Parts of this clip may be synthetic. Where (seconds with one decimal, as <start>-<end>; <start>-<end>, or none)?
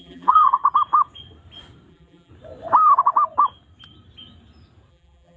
0.0-0.6; 1.9-2.3; 4.9-5.4